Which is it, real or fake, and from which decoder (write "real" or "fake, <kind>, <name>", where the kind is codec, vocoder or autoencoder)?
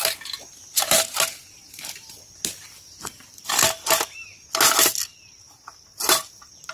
real